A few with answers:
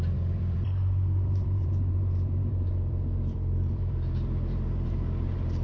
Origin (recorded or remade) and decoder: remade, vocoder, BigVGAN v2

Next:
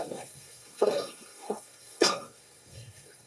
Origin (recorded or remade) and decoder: remade, codec, SNAC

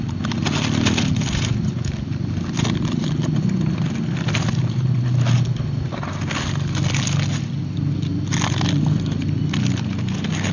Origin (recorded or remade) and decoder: recorded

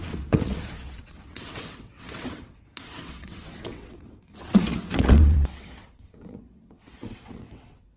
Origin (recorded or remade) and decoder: remade, vocoder, WaveNeXt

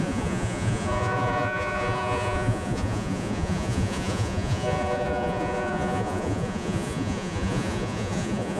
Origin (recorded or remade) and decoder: remade, vocoder, Vocos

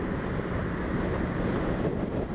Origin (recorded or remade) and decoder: recorded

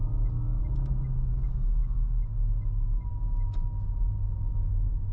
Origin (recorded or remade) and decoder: recorded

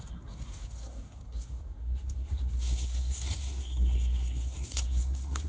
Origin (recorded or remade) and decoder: remade, codec, SNAC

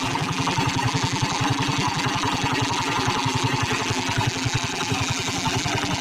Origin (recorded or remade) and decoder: remade, vocoder, BigVGAN v2